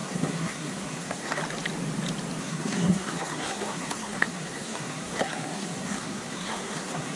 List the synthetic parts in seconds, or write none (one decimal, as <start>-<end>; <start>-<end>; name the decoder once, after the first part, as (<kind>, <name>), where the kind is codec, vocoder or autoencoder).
0.0-1.4 (codec, SNAC); 2.4-7.2